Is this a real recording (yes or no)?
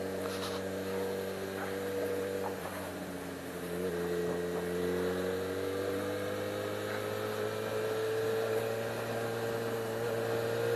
yes